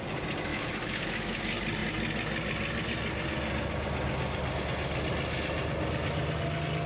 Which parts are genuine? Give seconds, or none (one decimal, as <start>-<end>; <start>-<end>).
0.0-0.5; 1.4-6.9